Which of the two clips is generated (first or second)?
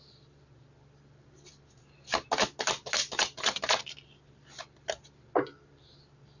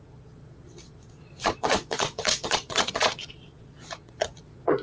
second